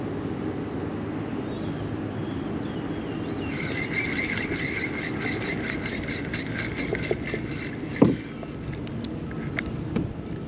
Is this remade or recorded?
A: recorded